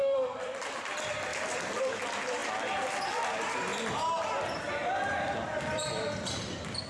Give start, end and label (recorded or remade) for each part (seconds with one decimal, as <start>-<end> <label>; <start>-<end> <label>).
0.0-0.8 remade; 0.8-1.3 recorded; 1.3-1.8 remade; 1.8-2.4 recorded; 2.4-3.0 remade; 3.0-6.9 recorded